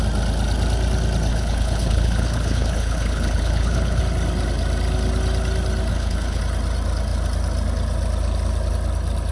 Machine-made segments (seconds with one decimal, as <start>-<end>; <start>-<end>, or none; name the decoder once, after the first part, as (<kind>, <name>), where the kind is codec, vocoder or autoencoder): 1.3-4.0 (codec, HILCodec); 5.9-6.4